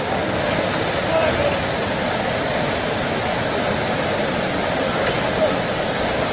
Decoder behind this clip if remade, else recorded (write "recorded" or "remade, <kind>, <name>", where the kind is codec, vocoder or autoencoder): recorded